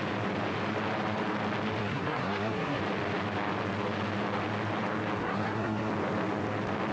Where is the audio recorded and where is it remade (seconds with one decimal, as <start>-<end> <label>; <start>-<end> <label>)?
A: 0.0-1.8 recorded; 1.8-2.8 remade; 2.8-5.2 recorded; 5.2-5.9 remade; 5.9-6.9 recorded